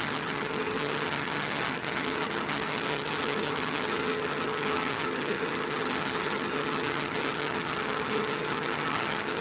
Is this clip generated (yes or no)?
yes